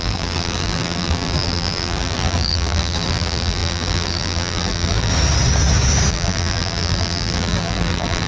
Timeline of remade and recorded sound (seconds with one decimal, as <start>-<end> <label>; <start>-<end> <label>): 0.0-5.1 remade; 5.1-6.1 recorded; 6.1-8.3 remade